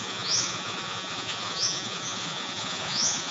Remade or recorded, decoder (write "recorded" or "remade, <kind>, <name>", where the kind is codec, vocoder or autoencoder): remade, vocoder, Vocos